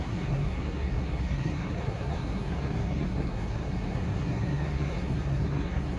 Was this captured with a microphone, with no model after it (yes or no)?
no